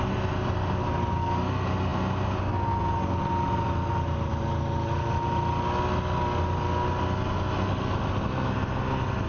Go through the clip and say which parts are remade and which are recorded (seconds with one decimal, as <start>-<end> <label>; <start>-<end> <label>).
0.0-9.3 recorded